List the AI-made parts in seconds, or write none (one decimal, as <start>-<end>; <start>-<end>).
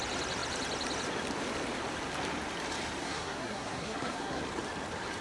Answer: 3.0-4.4